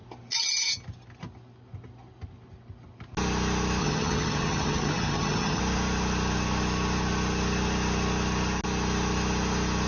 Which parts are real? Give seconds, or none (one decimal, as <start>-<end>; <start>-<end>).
0.0-3.8; 5.6-9.9